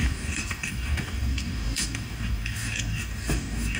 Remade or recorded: remade